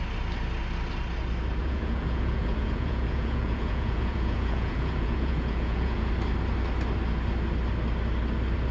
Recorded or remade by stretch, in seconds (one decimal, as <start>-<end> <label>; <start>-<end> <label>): 0.0-1.6 recorded; 1.6-6.1 remade; 6.1-8.7 recorded

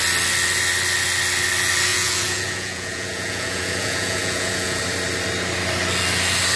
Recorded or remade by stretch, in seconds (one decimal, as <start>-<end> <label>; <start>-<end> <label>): 0.0-1.9 recorded; 1.9-4.8 remade; 4.8-6.6 recorded

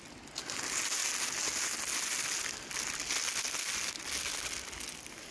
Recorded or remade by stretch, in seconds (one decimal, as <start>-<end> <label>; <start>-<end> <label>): 0.0-5.3 recorded

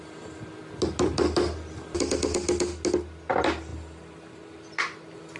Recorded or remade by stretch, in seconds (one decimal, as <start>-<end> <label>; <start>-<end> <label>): 0.0-5.4 recorded